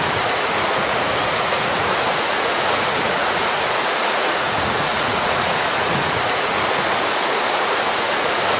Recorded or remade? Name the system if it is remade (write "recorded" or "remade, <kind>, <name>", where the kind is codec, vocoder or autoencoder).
remade, vocoder, Vocos